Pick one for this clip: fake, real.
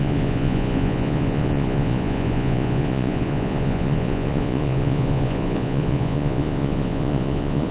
fake